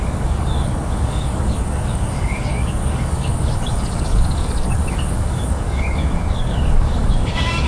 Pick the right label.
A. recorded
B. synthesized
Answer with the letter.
B